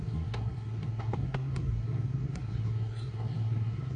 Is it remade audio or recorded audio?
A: remade